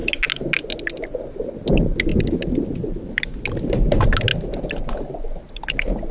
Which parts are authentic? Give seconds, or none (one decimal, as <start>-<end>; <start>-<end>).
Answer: 0.0-6.1